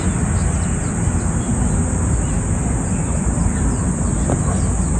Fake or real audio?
real